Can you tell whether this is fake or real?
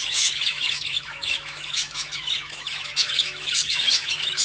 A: fake